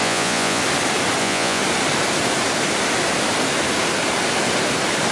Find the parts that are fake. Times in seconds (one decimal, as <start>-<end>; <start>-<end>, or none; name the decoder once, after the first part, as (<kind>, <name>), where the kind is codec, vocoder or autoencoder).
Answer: 0.0-0.6 (vocoder, Vocos); 1.2-1.6